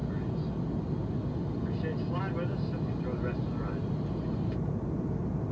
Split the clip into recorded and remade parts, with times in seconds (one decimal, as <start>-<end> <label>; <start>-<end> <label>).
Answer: 0.0-5.5 recorded